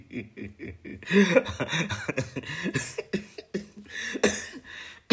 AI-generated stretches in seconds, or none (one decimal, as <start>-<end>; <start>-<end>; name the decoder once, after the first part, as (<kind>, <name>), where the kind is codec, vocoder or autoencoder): none

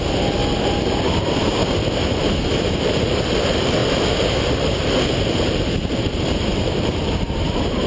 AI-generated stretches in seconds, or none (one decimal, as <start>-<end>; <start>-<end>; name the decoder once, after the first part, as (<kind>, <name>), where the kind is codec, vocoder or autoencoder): 0.0-0.4 (vocoder, BigVGAN v2); 0.9-1.6; 2.7-3.8; 4.4-7.9

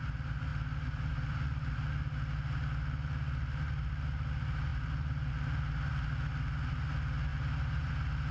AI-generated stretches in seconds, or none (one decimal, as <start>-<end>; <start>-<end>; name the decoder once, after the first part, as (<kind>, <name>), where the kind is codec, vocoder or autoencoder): 4.7-5.3 (vocoder, BigVGAN v2); 7.3-7.9

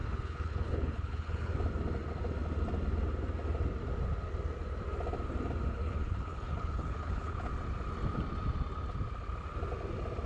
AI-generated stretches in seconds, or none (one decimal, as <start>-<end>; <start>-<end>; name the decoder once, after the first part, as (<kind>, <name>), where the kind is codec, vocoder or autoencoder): 0.0-1.5 (codec, HILCodec); 5.7-7.5

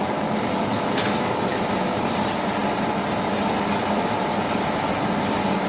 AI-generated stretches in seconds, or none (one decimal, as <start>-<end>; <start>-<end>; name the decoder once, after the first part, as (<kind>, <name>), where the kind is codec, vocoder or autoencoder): 0.7-1.3 (autoencoder, DAC-VAE)

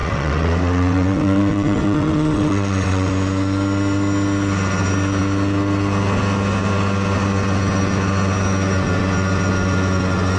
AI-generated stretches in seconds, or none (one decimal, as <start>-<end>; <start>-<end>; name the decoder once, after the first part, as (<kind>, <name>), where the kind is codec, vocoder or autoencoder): 0.0-3.1 (vocoder, WaveNeXt)

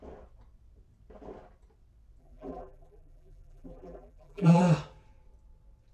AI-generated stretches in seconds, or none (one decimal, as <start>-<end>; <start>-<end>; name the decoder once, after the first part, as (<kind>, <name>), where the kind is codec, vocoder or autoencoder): 2.2-4.6 (vocoder, BigVGAN v2)